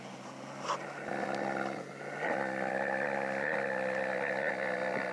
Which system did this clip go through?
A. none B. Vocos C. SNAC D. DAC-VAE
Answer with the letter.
A